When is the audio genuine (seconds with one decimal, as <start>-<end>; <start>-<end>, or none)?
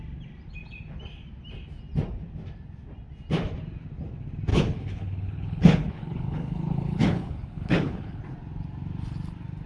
0.0-4.5; 8.2-9.7